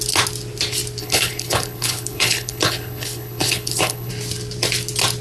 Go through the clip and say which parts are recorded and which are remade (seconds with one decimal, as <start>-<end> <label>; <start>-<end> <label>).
0.0-1.0 recorded; 1.0-4.1 remade; 4.1-5.2 recorded